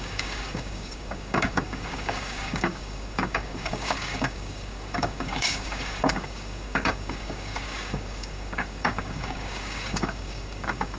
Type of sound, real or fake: fake